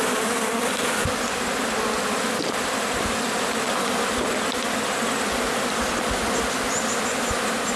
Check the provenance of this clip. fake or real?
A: real